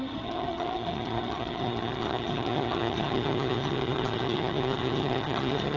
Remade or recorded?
remade